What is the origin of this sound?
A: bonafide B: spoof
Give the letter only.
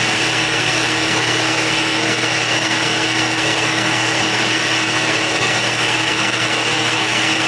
B